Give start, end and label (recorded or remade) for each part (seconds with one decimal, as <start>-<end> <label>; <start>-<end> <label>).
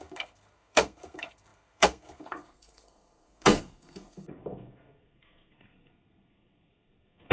0.0-7.3 remade